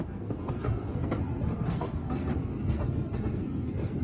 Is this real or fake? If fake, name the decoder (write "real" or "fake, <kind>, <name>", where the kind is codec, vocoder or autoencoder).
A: fake, codec, SNAC